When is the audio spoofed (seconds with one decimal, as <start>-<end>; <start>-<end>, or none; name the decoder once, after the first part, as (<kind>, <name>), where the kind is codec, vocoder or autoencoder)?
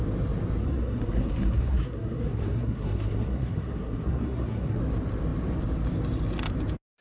0.6-4.8 (codec, SNAC)